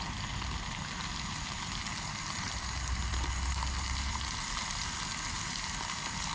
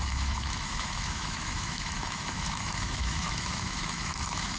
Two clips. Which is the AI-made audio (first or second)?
second